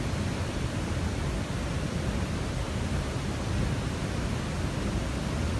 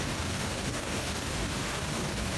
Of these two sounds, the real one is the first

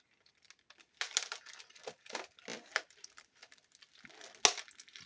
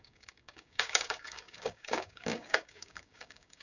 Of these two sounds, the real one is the first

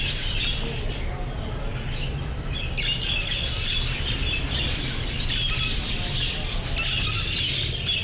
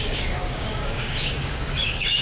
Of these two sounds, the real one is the first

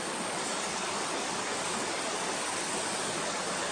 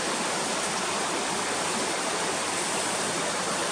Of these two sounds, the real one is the second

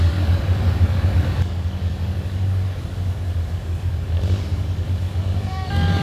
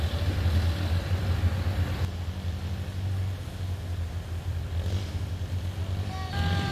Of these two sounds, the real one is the second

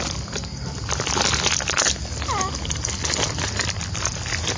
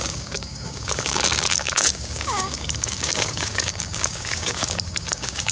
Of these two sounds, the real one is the first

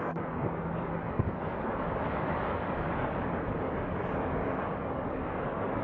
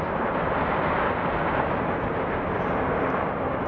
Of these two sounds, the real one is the second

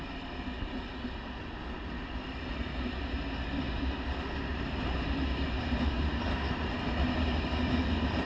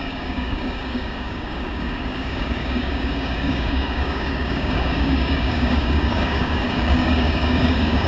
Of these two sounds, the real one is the first